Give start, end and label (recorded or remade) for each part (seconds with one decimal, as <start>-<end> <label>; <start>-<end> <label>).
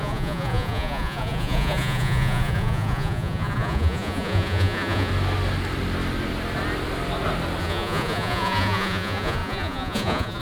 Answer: 0.0-5.1 remade; 5.1-7.6 recorded; 7.6-10.4 remade